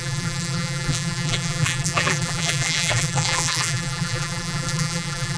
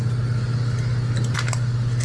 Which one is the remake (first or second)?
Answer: first